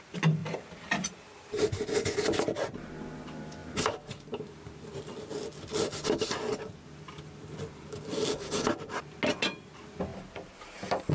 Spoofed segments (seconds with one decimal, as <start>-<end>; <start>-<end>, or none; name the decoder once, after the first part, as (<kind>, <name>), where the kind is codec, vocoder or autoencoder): none